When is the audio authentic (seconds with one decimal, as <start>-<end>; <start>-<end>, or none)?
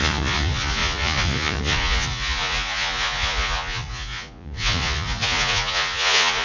none